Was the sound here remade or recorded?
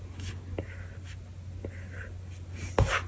recorded